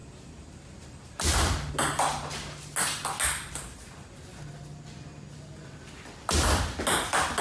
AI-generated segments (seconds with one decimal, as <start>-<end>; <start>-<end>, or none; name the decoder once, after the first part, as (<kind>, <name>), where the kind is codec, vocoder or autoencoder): none